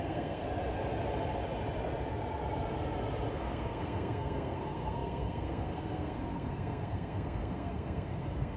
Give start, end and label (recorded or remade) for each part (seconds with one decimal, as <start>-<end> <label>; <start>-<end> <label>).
0.0-0.4 remade; 0.4-3.3 recorded; 3.3-8.6 remade